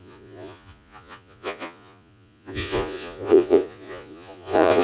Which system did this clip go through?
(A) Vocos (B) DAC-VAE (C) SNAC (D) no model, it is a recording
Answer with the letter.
A